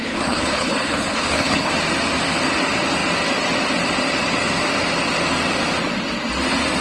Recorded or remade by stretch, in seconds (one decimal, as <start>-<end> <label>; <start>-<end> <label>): 0.0-1.7 remade; 1.7-6.8 recorded

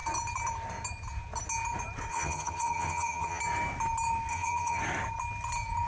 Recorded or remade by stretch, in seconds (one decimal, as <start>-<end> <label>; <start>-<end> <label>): 0.0-2.1 recorded; 2.1-3.4 remade; 3.4-4.3 recorded; 4.3-4.8 remade; 4.8-5.9 recorded

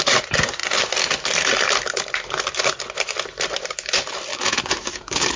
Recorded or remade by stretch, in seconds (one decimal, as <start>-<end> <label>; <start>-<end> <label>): 0.0-4.3 recorded; 4.3-5.4 remade

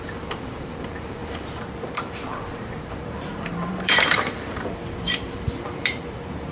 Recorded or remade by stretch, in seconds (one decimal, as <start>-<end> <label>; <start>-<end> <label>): 0.0-6.5 remade

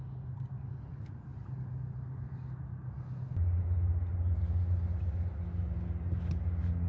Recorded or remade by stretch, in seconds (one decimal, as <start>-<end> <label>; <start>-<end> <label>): 0.0-6.9 recorded

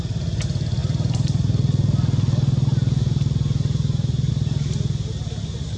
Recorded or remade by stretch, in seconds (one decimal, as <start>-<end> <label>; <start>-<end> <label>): 0.0-5.8 recorded

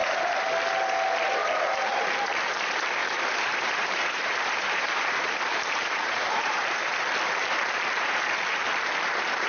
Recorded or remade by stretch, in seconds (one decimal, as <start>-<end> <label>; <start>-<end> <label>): 0.0-0.5 remade; 0.5-1.4 recorded; 1.4-2.0 remade; 2.0-3.0 recorded; 3.0-6.9 remade; 6.9-9.5 recorded